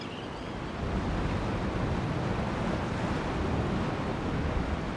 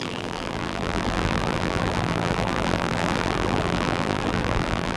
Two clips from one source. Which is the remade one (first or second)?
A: second